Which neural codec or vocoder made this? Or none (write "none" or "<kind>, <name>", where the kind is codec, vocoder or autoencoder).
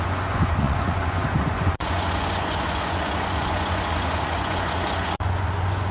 vocoder, Vocos